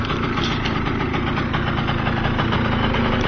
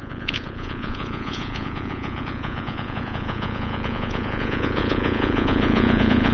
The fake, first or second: second